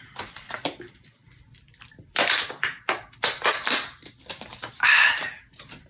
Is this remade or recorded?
remade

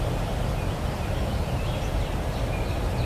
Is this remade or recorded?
recorded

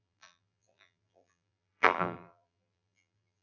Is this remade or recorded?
remade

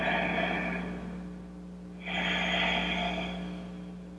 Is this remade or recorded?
recorded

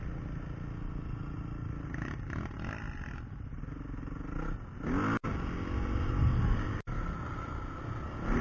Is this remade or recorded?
recorded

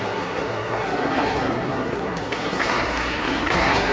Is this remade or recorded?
remade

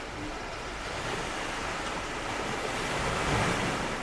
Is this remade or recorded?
recorded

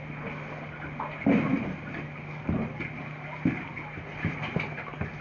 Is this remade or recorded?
recorded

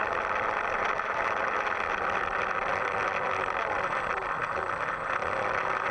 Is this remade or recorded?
recorded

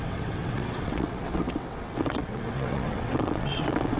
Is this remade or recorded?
remade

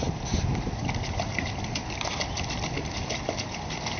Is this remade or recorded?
recorded